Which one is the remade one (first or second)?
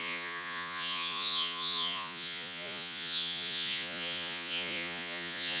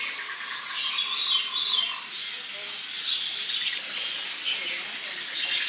first